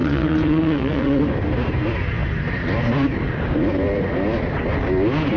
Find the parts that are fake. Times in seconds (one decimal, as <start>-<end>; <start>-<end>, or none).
0.0-1.2